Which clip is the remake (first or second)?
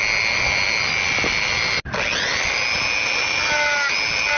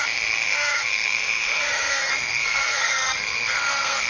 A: second